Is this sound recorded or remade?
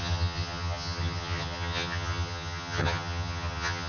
remade